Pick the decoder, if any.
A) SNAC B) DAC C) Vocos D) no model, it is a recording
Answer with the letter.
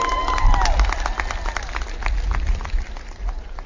D